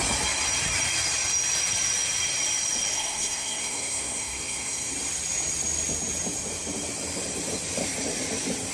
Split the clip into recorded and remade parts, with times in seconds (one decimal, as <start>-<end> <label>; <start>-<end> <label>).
0.0-2.9 recorded; 2.9-4.9 remade; 4.9-8.7 recorded